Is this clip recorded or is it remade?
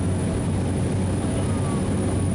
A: recorded